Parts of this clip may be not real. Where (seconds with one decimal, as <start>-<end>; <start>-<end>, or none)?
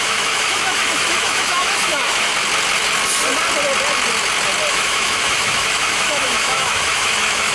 0.0-2.3; 4.7-7.5